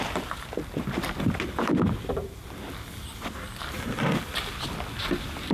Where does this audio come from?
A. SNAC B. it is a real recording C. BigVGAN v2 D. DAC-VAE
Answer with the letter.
B